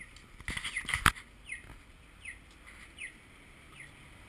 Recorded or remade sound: recorded